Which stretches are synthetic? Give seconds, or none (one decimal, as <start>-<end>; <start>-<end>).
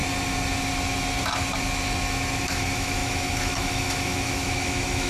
2.4-5.1